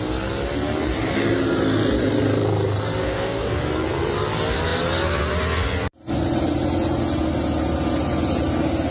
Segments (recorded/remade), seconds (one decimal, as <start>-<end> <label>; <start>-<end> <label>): 0.0-3.0 recorded; 3.0-3.6 remade; 3.6-8.9 recorded